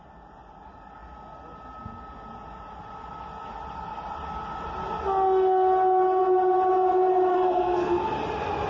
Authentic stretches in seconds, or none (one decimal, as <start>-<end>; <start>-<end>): 0.0-7.3; 8.0-8.7